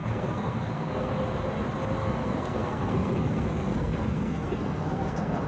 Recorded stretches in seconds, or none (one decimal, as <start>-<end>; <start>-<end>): 1.1-2.0